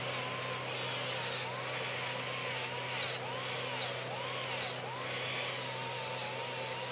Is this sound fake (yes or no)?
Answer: no